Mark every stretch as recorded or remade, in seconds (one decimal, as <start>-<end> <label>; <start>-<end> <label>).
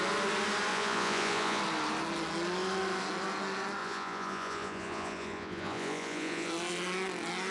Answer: 0.0-0.7 recorded; 0.7-1.6 remade; 1.6-3.8 recorded; 3.8-6.5 remade; 6.5-7.5 recorded